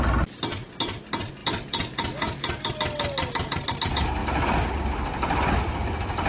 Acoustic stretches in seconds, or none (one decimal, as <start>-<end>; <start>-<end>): 0.0-1.4; 2.7-4.2